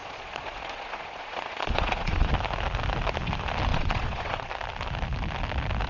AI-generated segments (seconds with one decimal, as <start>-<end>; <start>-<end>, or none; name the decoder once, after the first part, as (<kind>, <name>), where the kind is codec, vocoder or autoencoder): 0.0-2.3 (vocoder, Vocos); 3.7-4.5